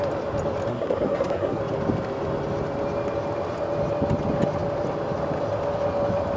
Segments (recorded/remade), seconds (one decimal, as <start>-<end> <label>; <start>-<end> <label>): 0.0-0.7 recorded; 0.7-1.6 remade; 1.6-6.4 recorded